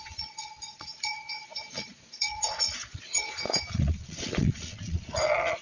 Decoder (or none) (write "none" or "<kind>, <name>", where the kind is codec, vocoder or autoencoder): vocoder, Vocos